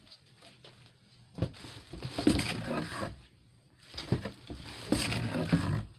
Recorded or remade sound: recorded